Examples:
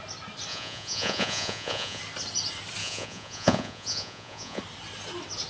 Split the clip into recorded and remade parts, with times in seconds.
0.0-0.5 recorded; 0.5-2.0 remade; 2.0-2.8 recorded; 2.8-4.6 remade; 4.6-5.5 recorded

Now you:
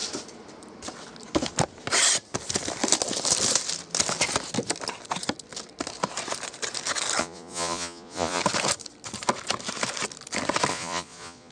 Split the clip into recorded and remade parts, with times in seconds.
0.0-7.2 recorded; 7.2-8.4 remade; 8.4-10.7 recorded; 10.7-11.5 remade

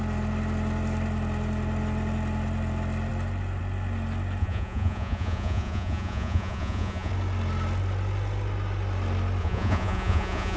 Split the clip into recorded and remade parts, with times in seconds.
0.0-4.4 recorded; 4.4-7.1 remade; 7.1-9.4 recorded; 9.4-10.6 remade

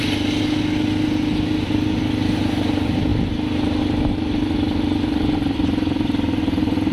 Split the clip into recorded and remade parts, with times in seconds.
0.0-6.9 recorded